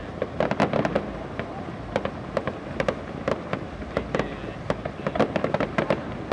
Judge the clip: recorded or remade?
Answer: recorded